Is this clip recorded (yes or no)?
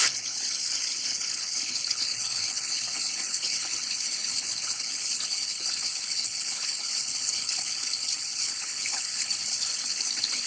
no